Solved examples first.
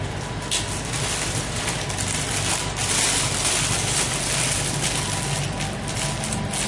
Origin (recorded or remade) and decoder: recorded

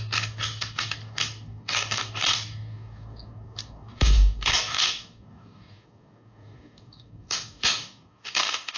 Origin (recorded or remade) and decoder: remade, codec, DAC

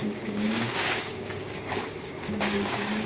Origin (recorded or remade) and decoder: remade, codec, DAC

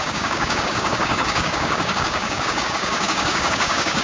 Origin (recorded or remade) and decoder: remade, codec, DAC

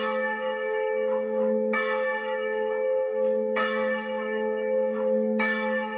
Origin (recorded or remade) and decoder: remade, codec, DAC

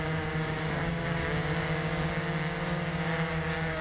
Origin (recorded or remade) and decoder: remade, codec, DAC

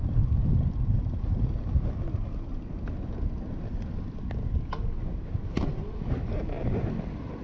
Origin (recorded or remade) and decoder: recorded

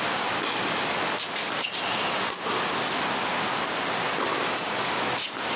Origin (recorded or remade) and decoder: recorded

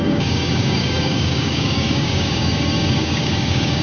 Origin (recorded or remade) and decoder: remade, codec, DAC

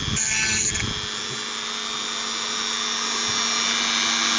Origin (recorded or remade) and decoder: recorded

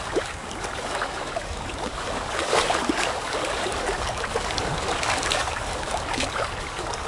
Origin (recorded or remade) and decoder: remade, codec, DAC